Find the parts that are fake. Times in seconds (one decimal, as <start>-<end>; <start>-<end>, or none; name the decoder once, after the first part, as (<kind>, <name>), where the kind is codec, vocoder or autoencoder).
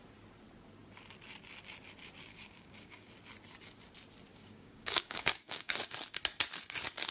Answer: 2.3-3.1 (codec, DAC); 4.3-5.7